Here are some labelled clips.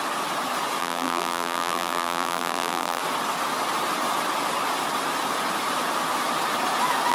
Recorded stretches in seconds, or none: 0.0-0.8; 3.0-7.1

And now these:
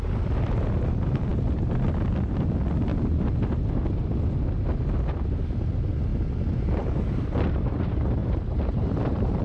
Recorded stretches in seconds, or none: 0.0-8.2

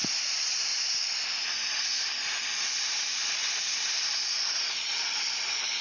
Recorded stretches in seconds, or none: 0.7-1.5